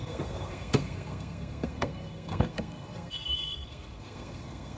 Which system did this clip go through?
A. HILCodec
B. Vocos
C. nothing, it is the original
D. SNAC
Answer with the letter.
D